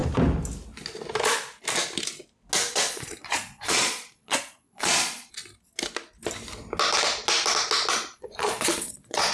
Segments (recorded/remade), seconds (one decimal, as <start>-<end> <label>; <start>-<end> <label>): 0.0-2.7 recorded; 2.7-5.4 remade; 5.4-7.9 recorded; 7.9-9.3 remade